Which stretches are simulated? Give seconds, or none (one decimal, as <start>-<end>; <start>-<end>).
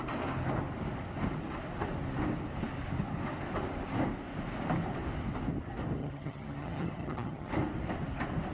6.0-7.5